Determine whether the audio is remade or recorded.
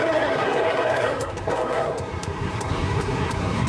remade